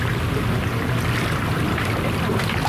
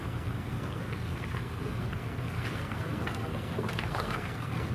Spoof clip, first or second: second